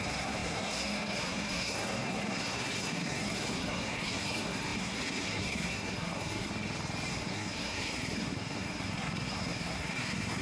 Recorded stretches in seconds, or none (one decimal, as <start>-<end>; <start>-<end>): 6.5-7.1